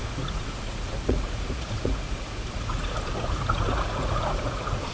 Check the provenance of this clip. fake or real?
fake